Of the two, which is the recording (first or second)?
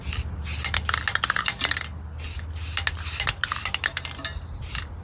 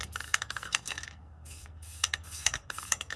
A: first